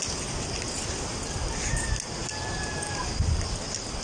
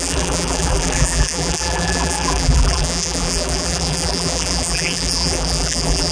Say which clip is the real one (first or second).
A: first